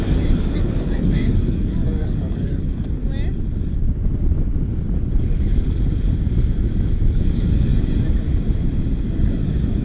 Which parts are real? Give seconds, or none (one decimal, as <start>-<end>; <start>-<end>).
3.0-7.1; 7.7-9.8